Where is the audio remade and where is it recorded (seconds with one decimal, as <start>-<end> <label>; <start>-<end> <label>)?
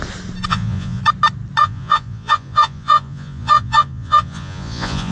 0.0-0.5 recorded; 0.5-1.0 remade; 1.0-1.6 recorded; 1.6-5.1 remade